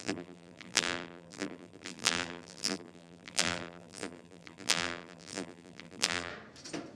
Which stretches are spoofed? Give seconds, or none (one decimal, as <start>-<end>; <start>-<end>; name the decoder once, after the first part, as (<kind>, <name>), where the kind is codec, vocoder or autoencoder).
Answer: 0.0-6.3 (vocoder, BigVGAN v2)